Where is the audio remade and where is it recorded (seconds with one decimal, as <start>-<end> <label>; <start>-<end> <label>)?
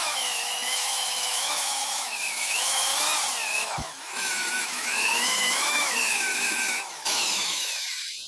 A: 0.0-2.9 remade; 2.9-3.5 recorded; 3.5-8.3 remade